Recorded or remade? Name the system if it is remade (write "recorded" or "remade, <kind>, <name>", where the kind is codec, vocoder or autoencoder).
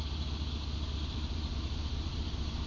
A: remade, vocoder, BigVGAN v2